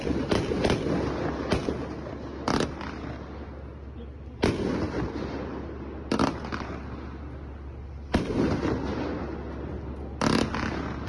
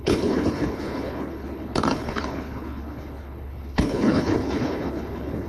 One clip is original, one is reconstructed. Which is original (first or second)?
first